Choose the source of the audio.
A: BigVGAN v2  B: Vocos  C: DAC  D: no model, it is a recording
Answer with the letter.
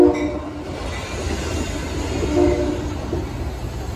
D